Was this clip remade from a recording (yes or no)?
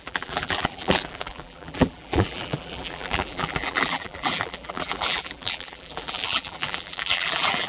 yes